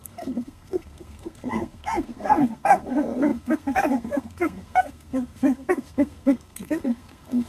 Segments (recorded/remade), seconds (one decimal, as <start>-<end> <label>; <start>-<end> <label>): 0.0-7.5 remade